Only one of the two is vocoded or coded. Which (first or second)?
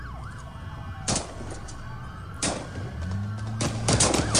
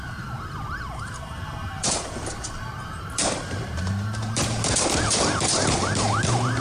second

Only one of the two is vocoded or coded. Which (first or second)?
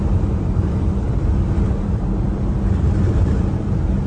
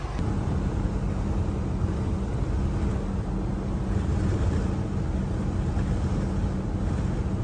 first